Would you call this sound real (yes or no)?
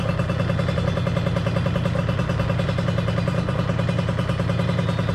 yes